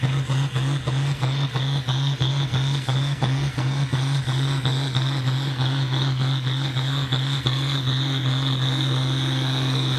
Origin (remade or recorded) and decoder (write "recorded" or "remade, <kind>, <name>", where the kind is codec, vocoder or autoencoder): remade, codec, SNAC